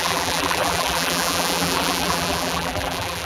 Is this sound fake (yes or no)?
yes